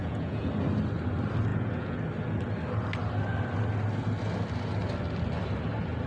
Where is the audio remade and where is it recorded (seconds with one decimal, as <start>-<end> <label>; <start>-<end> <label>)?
0.0-0.5 remade; 0.5-1.5 recorded; 1.5-2.0 remade; 2.0-6.1 recorded